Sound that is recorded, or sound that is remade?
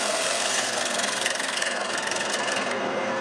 remade